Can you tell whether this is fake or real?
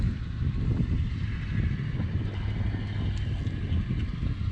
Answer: real